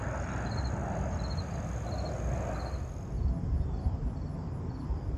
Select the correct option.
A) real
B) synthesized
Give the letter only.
A